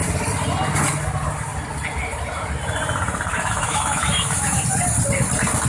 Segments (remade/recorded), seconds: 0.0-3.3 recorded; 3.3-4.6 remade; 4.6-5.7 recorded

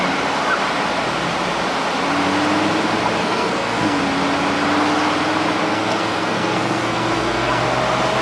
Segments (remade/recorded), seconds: 0.0-3.2 recorded; 3.2-4.0 remade; 4.0-5.6 recorded; 5.6-7.6 remade; 7.6-8.2 recorded

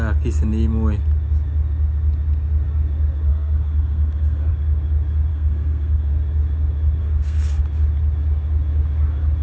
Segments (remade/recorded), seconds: 0.0-3.3 recorded; 3.3-4.5 remade; 4.5-5.3 recorded; 5.3-6.1 remade; 6.1-7.0 recorded; 7.0-7.6 remade; 7.6-9.4 recorded

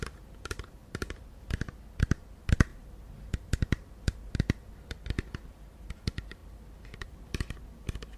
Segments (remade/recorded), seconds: 0.0-0.8 recorded; 0.8-1.4 remade; 1.4-8.2 recorded